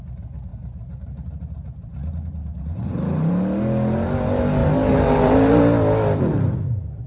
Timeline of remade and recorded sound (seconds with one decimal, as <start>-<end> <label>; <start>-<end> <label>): 0.0-0.5 recorded; 0.5-3.3 remade; 3.3-4.6 recorded; 4.6-5.6 remade; 5.6-7.1 recorded